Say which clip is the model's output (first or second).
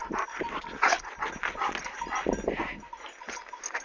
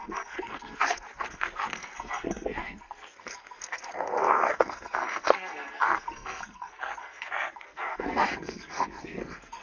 second